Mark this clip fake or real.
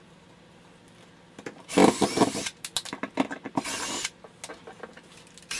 real